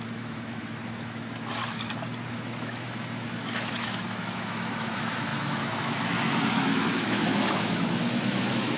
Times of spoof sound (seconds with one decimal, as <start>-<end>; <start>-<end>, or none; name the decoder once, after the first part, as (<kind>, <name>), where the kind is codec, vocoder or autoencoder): 0.0-1.6 (autoencoder, DAC-VAE); 2.3-8.8